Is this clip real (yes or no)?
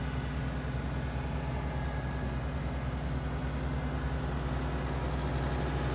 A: yes